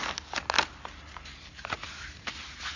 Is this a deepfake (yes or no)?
no